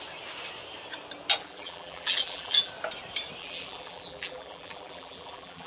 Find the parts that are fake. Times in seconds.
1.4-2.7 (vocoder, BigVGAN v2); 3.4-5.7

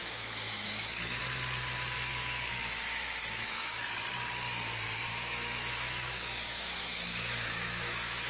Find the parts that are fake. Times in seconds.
0.0-1.2 (autoencoder, DAC-VAE); 2.1-3.9; 5.1-8.3

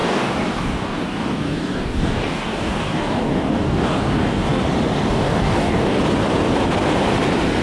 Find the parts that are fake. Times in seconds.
0.0-4.6 (codec, DAC); 5.1-6.0

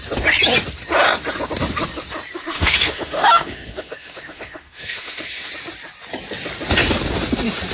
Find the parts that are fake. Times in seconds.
2.4-5.5 (autoencoder, DAC-VAE)

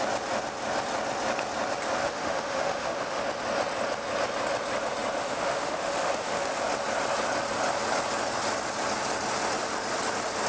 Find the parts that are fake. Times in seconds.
2.0-3.2 (autoencoder, DAC-VAE); 5.2-6.6